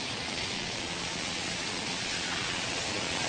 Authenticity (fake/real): fake